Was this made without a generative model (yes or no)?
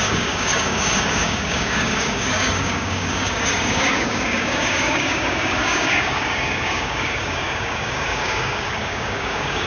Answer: no